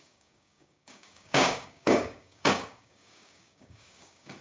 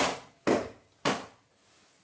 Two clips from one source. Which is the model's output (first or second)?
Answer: first